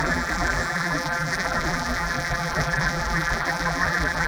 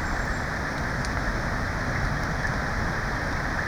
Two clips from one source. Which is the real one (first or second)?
second